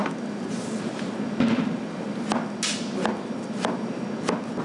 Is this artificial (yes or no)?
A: no